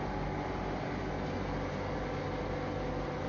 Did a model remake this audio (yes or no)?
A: no